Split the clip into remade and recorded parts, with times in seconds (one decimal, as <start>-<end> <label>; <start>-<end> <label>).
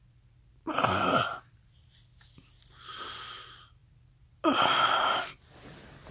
0.0-6.1 recorded